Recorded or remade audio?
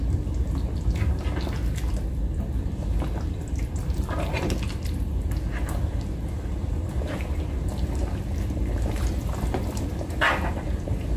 recorded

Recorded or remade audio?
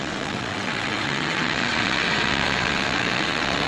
remade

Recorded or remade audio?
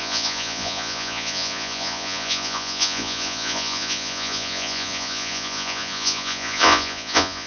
remade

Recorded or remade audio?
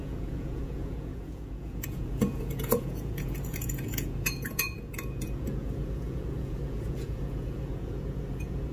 remade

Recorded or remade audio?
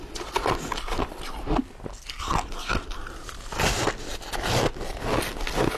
recorded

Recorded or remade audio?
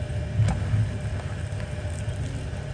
recorded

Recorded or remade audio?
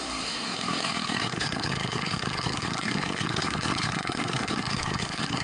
remade